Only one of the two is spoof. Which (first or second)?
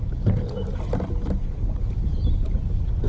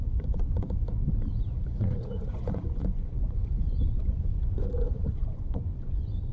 second